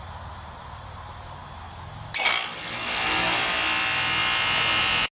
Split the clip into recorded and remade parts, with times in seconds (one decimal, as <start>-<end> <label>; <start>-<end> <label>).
0.0-5.2 recorded